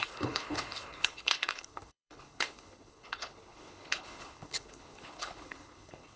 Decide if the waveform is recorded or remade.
remade